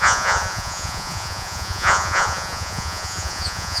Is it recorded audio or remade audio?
remade